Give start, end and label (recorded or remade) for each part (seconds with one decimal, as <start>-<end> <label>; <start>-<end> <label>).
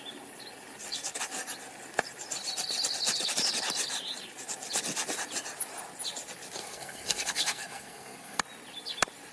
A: 0.0-6.6 recorded; 6.6-8.4 remade; 8.4-9.3 recorded